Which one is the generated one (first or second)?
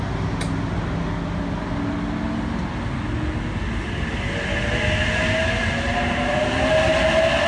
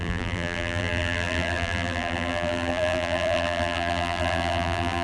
second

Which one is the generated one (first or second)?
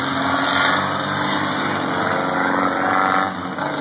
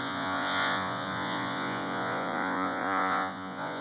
second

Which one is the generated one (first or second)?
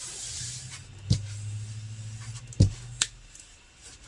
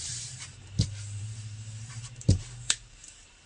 second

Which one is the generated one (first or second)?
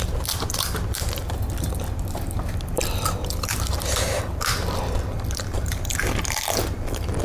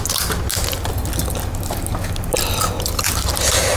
first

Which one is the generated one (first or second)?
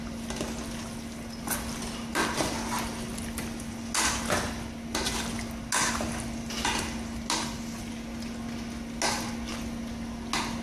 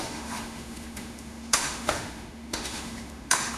second